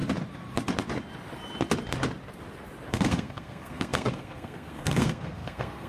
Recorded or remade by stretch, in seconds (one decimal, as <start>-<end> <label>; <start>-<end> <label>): 0.0-2.9 recorded; 2.9-5.9 remade